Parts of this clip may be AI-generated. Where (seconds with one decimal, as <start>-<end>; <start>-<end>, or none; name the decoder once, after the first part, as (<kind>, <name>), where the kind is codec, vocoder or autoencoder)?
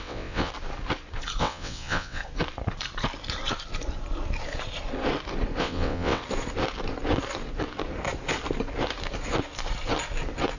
0.0-0.5 (vocoder, WaveNeXt); 1.4-2.2; 5.6-6.2